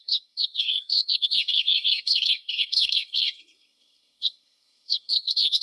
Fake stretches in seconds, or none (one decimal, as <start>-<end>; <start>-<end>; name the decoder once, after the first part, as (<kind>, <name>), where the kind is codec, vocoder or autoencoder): 0.0-5.6 (codec, SNAC)